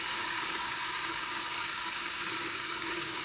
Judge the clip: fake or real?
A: fake